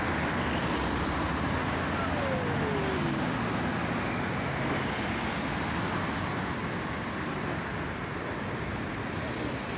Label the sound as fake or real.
real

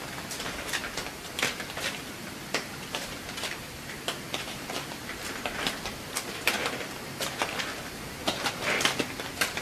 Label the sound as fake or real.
fake